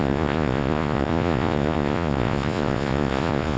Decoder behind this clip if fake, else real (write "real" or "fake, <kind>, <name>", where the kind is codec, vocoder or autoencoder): fake, vocoder, Vocos